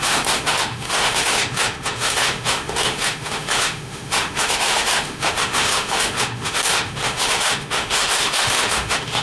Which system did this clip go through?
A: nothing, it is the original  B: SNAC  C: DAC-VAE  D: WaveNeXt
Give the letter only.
C